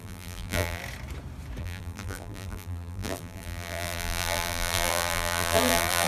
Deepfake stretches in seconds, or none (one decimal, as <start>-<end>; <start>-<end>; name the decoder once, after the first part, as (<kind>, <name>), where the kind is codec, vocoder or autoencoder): 0.0-0.8 (vocoder, BigVGAN v2); 1.6-6.1